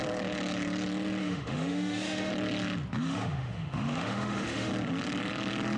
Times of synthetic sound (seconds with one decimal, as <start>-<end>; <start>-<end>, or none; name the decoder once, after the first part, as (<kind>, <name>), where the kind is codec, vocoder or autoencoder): 1.2-2.3 (autoencoder, DAC-VAE); 3.0-4.7